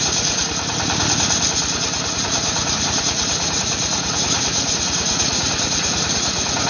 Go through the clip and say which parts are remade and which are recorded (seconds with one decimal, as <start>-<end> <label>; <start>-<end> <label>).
0.0-0.4 remade; 0.4-2.2 recorded; 2.2-6.7 remade